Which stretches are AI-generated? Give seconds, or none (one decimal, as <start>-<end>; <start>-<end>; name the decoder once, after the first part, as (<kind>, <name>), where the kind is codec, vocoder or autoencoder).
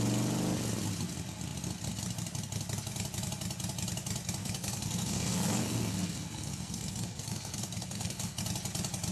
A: 4.4-8.4 (codec, SNAC)